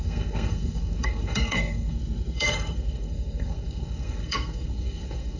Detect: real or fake fake